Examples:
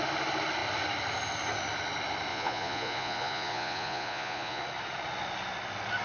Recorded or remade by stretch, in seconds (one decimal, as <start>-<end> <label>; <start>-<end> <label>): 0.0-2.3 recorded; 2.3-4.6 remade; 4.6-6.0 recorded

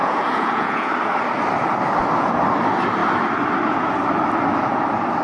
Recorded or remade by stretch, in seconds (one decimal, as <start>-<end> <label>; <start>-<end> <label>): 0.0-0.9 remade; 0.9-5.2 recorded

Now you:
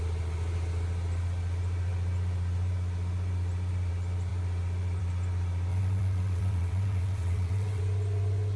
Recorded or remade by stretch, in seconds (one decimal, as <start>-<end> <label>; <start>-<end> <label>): 0.0-5.7 recorded; 5.7-7.8 remade; 7.8-8.6 recorded

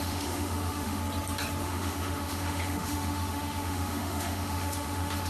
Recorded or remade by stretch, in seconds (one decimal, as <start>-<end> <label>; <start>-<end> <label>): 0.0-1.0 remade; 1.0-1.6 recorded; 1.6-5.3 remade

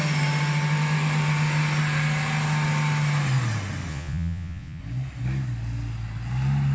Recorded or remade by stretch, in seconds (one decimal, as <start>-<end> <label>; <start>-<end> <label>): 0.0-3.9 recorded; 3.9-4.8 remade; 4.8-6.7 recorded